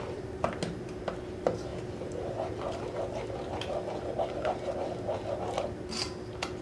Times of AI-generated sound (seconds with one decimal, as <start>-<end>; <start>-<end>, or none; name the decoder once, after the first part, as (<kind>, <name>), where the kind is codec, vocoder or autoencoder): none